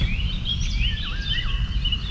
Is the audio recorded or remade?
recorded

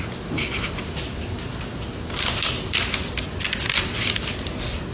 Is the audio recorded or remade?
recorded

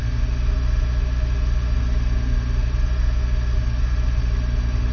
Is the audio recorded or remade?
recorded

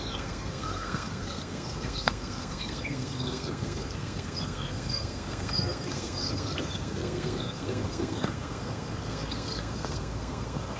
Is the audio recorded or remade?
remade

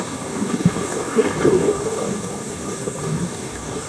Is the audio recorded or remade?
remade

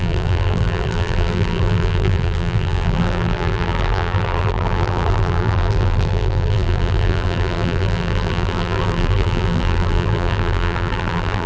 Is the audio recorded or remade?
remade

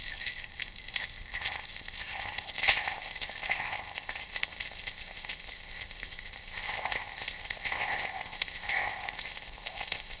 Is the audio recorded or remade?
remade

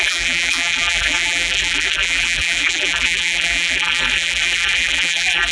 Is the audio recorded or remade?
remade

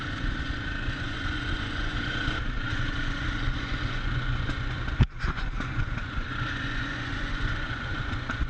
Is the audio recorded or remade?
remade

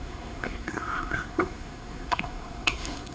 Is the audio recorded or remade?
remade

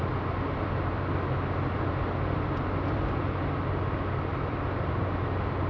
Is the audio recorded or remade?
recorded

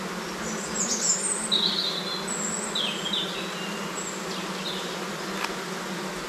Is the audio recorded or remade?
recorded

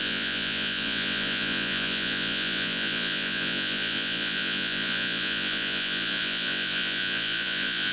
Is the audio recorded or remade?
remade